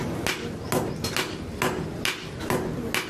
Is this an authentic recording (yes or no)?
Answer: yes